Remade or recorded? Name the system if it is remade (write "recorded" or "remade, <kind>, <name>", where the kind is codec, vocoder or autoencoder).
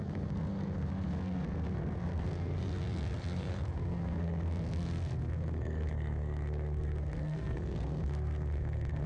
remade, codec, SNAC